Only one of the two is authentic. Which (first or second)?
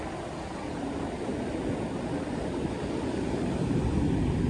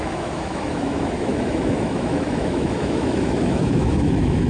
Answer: first